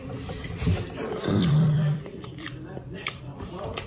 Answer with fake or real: fake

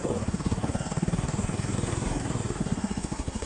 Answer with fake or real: fake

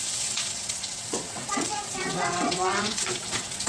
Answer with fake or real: fake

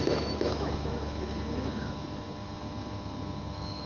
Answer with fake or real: fake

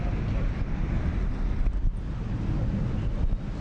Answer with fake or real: fake